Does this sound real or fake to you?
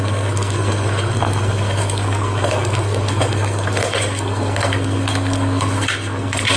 fake